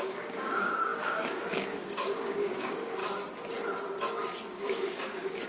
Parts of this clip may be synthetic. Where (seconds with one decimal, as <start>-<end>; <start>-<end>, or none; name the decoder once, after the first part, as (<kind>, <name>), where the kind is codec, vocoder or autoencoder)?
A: 0.0-3.0 (codec, DAC); 4.5-5.5